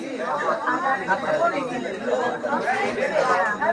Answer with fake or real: fake